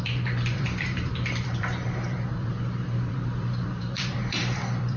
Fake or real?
fake